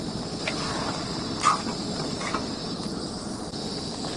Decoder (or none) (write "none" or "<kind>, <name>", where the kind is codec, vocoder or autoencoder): none